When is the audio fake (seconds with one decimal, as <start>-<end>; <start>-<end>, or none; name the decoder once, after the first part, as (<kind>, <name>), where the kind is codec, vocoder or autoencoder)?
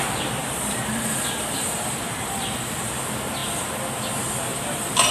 0.4-2.9 (vocoder, BigVGAN v2); 4.5-5.1